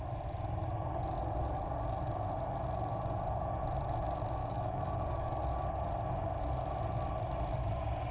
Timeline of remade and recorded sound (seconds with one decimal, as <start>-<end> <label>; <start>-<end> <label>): 0.0-4.4 recorded; 4.4-5.4 remade; 5.4-8.1 recorded